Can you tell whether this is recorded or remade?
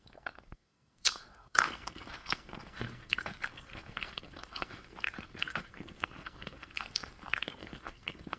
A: remade